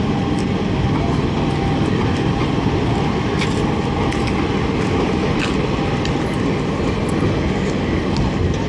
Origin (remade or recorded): recorded